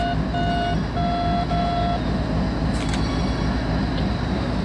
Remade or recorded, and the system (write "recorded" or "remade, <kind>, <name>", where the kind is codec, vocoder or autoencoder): recorded